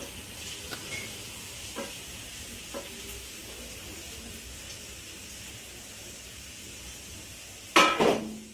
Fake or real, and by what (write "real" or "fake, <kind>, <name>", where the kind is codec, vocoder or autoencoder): real